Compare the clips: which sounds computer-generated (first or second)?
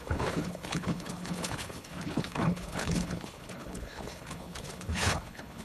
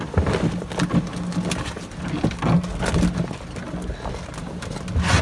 first